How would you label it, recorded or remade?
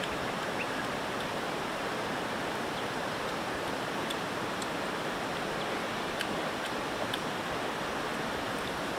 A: recorded